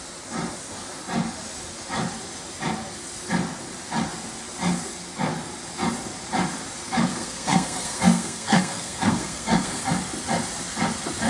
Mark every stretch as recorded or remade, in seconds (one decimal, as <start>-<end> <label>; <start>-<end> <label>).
0.0-7.1 recorded; 7.1-9.8 remade; 9.8-11.3 recorded